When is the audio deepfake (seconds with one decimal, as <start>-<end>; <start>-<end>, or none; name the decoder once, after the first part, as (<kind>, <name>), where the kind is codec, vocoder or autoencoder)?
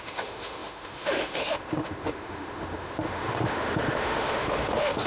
0.0-5.1 (autoencoder, DAC-VAE)